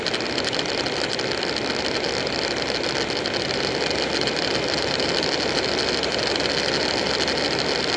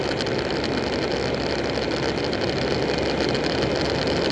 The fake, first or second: first